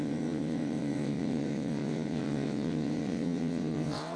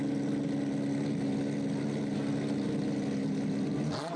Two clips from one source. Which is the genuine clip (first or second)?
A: second